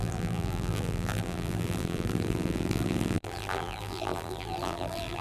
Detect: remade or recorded remade